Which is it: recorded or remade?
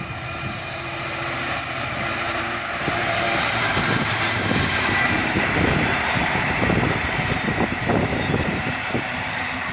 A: remade